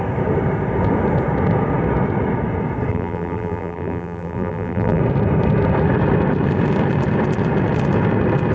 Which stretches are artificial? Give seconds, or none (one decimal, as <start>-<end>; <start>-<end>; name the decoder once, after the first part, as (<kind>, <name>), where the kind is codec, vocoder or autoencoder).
2.9-5.0 (vocoder, BigVGAN v2)